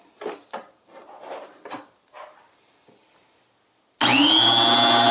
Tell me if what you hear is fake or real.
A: real